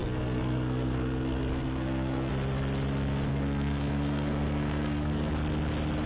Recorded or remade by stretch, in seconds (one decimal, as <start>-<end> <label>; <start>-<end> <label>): 0.0-2.3 remade; 2.3-3.3 recorded; 3.3-5.3 remade; 5.3-6.1 recorded